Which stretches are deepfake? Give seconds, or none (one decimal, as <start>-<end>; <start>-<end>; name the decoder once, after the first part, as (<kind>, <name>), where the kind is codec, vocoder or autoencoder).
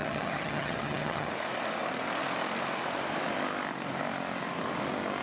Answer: 0.0-1.3 (vocoder, HiFi-GAN)